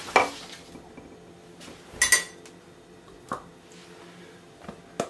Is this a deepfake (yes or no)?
no